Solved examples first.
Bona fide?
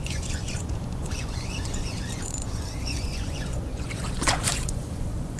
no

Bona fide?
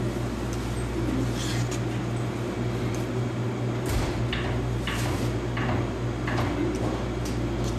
yes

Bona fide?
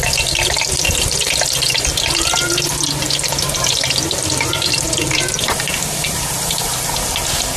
no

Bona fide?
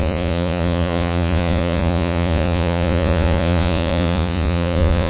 no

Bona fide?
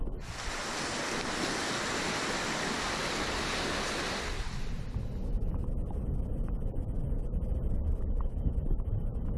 yes